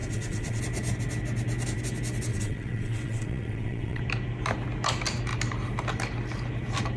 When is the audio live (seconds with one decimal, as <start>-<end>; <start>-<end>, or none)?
0.6-2.3; 4.0-7.0